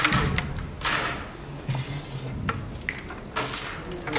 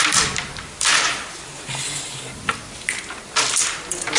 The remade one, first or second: second